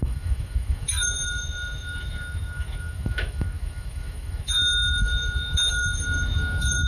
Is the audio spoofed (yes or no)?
yes